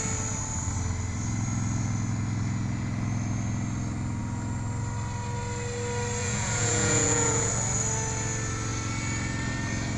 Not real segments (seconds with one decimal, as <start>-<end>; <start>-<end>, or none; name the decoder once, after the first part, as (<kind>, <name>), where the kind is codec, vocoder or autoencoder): 6.2-7.5 (vocoder, Vocos)